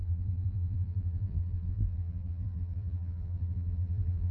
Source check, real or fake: fake